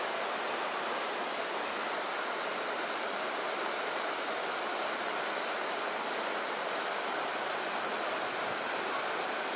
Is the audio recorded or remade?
recorded